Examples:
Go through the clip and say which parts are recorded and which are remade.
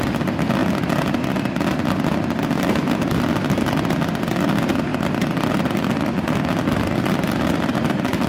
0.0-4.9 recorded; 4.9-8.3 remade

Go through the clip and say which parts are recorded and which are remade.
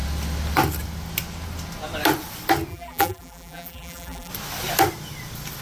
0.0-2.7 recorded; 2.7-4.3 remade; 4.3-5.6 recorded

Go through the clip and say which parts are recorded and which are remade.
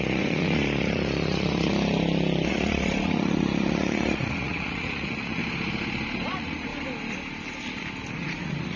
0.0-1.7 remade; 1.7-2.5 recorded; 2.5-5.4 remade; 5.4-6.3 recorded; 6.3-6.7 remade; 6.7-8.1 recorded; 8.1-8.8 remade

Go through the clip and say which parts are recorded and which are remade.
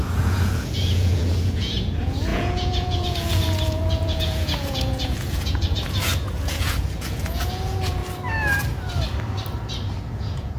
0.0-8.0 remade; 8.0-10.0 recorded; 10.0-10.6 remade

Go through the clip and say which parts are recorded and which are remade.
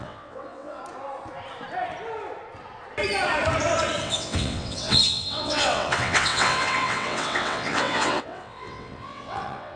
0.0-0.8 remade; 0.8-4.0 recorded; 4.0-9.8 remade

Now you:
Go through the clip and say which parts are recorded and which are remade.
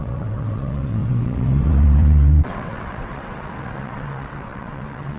0.0-5.2 remade